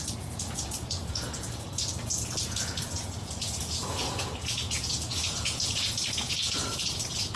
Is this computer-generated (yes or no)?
yes